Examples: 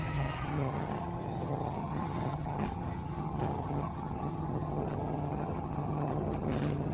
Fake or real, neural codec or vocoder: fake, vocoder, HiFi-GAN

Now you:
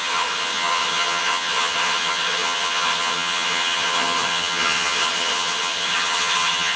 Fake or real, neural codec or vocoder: fake, vocoder, HiFi-GAN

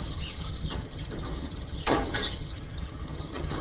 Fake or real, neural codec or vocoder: fake, vocoder, HiFi-GAN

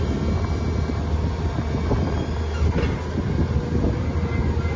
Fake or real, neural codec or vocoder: real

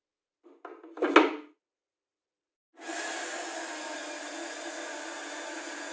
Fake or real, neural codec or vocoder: real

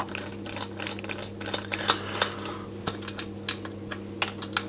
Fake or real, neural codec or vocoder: real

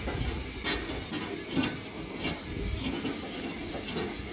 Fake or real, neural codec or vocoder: real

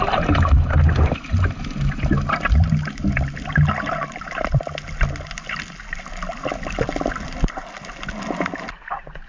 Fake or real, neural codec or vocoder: real